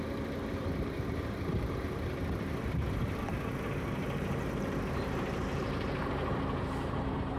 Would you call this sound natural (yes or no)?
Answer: no